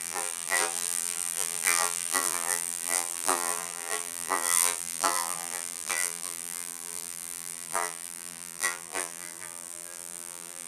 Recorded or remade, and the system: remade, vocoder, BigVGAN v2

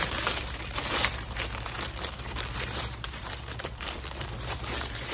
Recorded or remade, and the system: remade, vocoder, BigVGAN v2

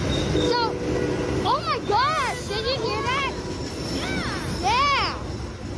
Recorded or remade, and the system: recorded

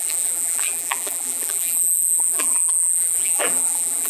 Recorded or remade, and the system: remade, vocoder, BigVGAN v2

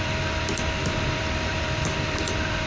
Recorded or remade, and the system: remade, vocoder, BigVGAN v2